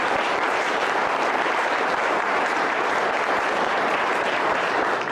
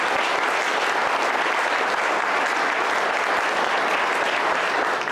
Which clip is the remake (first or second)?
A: first